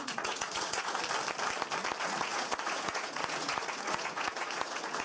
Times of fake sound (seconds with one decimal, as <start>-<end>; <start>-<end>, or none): 0.0-1.0; 2.0-5.0